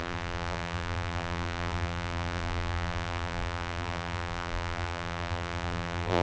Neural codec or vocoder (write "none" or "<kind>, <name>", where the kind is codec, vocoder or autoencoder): vocoder, BigVGAN v2